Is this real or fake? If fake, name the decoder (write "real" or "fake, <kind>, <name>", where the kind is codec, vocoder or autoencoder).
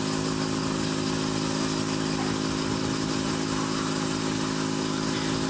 real